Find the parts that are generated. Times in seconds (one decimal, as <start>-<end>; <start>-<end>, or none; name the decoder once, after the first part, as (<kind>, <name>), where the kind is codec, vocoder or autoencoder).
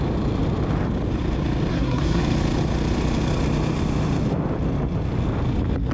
1.7-2.2 (codec, SNAC)